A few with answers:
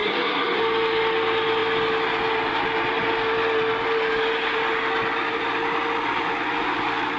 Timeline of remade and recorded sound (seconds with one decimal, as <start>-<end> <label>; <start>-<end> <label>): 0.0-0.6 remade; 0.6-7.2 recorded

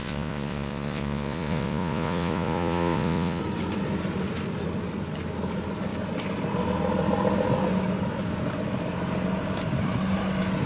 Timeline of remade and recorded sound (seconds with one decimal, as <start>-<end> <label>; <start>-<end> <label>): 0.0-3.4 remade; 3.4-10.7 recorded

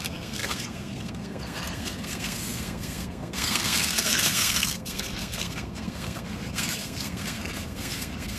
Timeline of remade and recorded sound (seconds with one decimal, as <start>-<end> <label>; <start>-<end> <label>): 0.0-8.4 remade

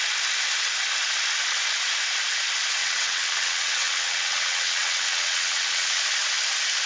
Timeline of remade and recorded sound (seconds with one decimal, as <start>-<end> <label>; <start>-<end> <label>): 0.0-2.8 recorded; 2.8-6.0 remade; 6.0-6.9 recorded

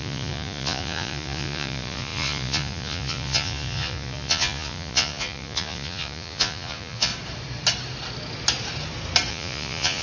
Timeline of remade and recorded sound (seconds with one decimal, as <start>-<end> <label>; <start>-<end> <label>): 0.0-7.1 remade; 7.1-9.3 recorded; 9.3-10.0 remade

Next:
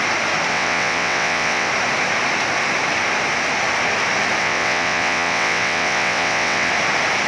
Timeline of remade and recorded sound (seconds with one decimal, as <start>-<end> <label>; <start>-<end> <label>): 0.0-0.5 recorded; 0.5-1.7 remade; 1.7-4.4 recorded; 4.4-6.7 remade; 6.7-7.3 recorded

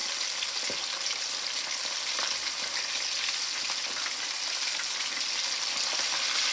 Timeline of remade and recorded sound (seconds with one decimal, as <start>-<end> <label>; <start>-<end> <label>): 0.0-6.5 recorded

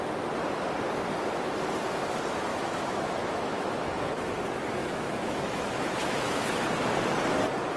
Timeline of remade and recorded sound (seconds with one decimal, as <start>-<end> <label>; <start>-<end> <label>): 0.0-2.5 recorded; 2.5-4.3 remade; 4.3-4.8 recorded; 4.8-6.6 remade; 6.6-7.8 recorded